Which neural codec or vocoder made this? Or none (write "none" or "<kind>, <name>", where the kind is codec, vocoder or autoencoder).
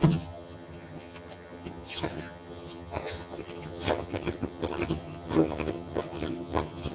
vocoder, HiFi-GAN